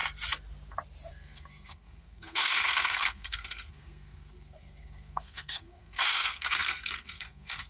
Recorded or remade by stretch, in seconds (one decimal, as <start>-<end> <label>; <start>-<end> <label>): 0.0-1.1 recorded; 1.1-7.7 remade